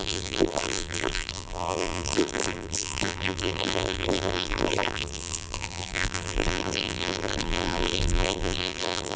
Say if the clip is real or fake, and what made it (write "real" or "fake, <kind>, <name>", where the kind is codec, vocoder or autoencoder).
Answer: fake, vocoder, BigVGAN v2